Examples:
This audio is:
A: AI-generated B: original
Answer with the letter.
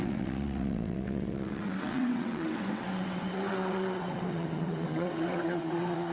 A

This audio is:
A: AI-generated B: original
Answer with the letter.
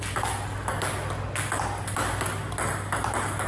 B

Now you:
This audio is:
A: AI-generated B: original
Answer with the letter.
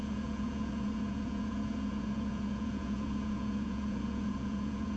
A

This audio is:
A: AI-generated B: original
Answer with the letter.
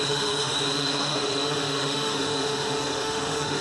A